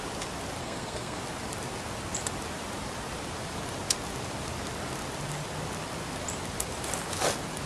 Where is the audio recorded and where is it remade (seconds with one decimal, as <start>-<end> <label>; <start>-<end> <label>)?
0.0-0.6 recorded; 0.6-1.2 remade; 1.2-7.7 recorded